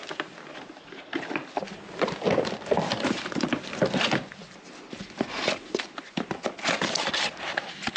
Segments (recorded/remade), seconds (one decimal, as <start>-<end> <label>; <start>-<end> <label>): 0.0-8.0 recorded